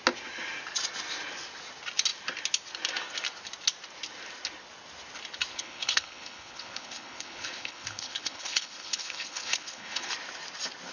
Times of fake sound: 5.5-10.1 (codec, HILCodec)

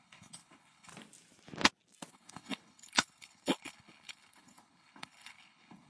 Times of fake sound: 0.0-0.9 (codec, HILCodec); 2.1-5.9

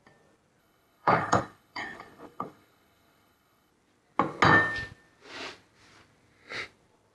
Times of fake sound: 0.6-3.7 (codec, HILCodec)

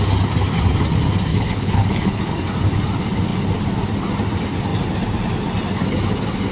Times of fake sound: 1.3-2.2 (codec, HILCodec)

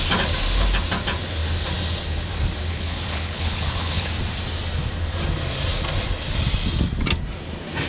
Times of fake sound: 2.6-4.1 (codec, HILCodec)

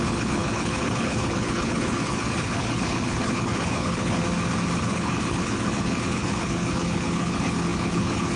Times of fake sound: 0.0-4.2 (codec, HILCodec); 4.8-8.4

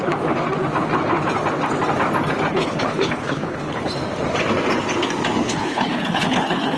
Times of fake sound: 2.5-3.9 (codec, HILCodec); 5.4-6.8

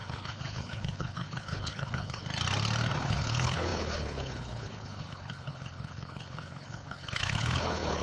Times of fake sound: 0.0-2.2 (codec, HILCodec); 3.0-8.0